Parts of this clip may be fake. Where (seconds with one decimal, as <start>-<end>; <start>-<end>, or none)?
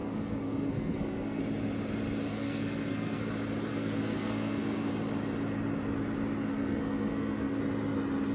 0.0-1.4; 2.3-3.3; 3.7-4.9; 6.5-7.6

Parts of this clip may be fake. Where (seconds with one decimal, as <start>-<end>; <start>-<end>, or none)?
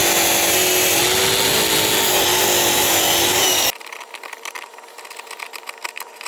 none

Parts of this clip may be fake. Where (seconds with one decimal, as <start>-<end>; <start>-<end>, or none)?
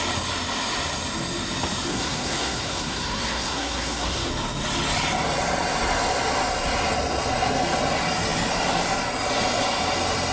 1.9-4.3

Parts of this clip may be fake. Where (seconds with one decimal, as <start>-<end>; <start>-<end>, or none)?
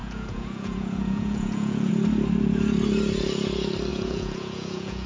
0.0-1.9; 3.9-5.1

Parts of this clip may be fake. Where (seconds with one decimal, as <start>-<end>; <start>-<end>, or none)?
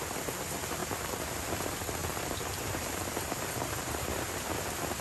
0.8-1.6; 2.0-4.3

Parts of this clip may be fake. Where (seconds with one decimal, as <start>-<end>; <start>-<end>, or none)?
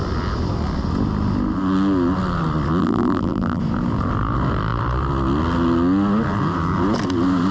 2.8-3.6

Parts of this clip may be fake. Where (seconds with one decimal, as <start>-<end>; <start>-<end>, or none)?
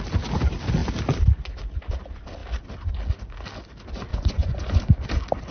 4.1-4.8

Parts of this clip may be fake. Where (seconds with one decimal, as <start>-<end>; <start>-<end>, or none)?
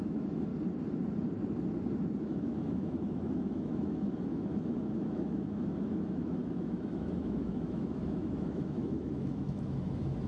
0.0-0.5; 2.2-10.3